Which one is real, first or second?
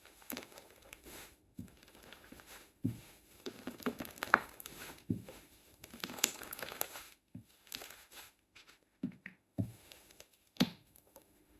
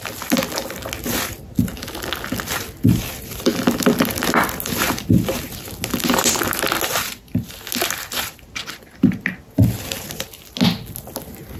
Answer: second